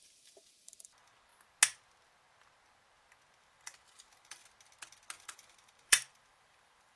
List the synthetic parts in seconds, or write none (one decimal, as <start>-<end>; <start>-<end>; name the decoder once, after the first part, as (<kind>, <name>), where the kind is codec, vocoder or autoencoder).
0.0-1.3 (vocoder, BigVGAN v2); 3.4-4.4; 5.2-7.0